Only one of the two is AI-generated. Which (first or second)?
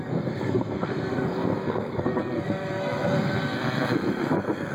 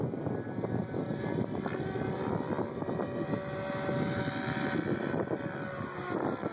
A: first